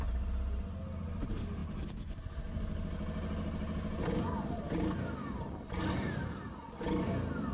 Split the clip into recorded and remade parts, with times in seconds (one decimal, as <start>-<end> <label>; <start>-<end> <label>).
0.0-7.5 recorded